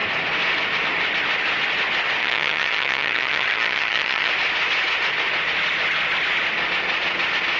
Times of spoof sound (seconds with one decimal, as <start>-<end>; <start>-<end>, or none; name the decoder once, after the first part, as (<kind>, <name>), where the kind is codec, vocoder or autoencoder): 2.2-4.3 (vocoder, HiFi-GAN)